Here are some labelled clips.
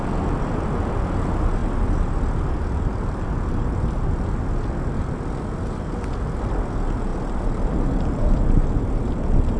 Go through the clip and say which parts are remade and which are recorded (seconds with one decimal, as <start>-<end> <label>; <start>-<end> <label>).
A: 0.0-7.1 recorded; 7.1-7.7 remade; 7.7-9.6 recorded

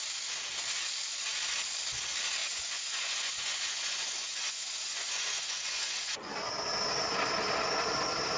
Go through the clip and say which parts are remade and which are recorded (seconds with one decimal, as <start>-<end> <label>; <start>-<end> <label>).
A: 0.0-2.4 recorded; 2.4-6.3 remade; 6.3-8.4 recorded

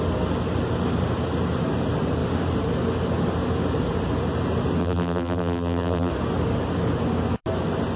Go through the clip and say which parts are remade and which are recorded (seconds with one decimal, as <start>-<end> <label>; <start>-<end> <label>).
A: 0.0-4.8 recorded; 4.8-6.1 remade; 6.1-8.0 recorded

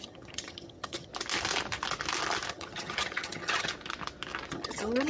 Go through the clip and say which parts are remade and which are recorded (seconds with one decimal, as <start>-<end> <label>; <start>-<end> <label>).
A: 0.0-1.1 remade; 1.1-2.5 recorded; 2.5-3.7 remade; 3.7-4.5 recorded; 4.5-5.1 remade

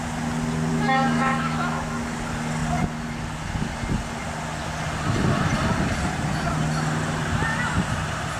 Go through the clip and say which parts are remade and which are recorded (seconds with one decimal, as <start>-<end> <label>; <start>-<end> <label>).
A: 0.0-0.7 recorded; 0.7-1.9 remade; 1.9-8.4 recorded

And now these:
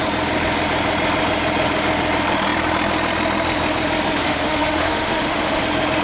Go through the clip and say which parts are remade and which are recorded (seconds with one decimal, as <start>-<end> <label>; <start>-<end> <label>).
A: 0.0-4.2 recorded; 4.2-5.6 remade; 5.6-6.0 recorded